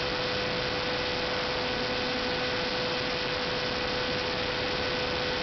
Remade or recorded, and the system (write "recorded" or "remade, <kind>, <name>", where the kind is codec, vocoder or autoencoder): recorded